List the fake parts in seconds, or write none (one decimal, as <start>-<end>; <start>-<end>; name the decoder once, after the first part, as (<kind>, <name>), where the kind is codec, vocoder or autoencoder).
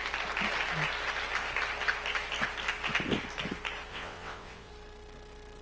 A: 3.9-4.7 (vocoder, WaveNeXt)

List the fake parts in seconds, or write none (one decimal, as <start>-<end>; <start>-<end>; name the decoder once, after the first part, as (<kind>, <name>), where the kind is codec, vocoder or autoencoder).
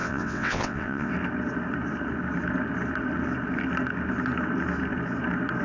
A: 0.0-1.1 (vocoder, WaveNeXt)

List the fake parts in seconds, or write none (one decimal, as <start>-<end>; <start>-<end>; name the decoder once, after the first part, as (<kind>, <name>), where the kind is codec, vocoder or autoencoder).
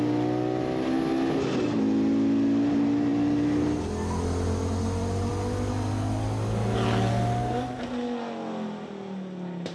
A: none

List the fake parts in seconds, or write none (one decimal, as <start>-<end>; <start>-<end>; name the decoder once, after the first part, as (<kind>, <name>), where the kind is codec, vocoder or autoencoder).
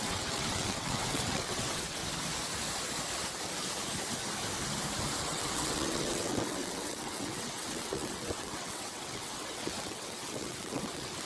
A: 0.0-2.0 (vocoder, WaveNeXt); 5.2-11.3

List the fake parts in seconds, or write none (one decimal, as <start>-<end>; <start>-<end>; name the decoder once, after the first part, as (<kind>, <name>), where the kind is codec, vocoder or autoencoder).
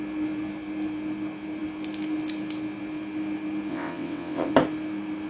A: 3.7-4.5 (vocoder, WaveNeXt)